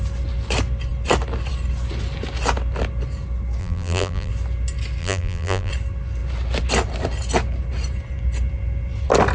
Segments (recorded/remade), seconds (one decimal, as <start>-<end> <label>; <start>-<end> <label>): 0.0-3.6 recorded; 3.6-4.3 remade; 4.3-5.0 recorded; 5.0-5.7 remade; 5.7-9.3 recorded